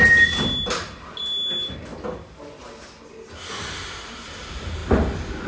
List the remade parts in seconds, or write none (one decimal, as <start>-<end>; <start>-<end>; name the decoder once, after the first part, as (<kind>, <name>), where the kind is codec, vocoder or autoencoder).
none